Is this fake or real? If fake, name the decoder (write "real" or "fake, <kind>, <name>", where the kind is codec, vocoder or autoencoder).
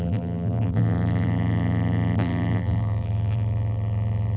fake, vocoder, BigVGAN v2